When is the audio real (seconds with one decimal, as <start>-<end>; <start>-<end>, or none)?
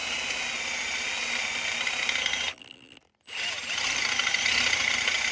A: 0.0-5.3